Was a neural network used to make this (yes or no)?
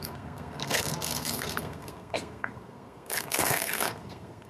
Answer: yes